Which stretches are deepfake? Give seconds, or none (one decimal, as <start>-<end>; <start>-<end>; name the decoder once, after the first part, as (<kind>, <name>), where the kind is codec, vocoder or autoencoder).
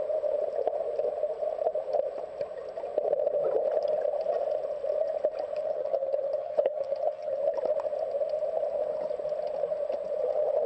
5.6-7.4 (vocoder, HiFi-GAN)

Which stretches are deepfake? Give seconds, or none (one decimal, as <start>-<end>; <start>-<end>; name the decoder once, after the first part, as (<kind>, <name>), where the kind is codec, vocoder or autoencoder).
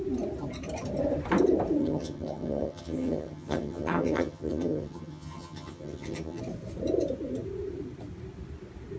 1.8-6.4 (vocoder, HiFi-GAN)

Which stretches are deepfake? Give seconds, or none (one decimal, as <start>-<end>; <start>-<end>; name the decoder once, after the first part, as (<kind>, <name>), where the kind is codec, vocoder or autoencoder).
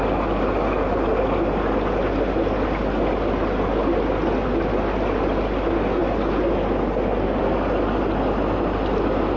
none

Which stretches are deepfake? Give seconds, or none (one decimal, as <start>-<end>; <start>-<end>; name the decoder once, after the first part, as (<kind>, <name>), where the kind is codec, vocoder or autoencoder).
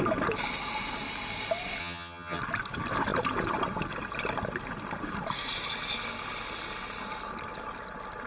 1.8-2.4 (vocoder, HiFi-GAN)